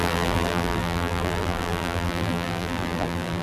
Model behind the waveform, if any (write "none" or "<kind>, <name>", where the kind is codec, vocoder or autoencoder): vocoder, BigVGAN v2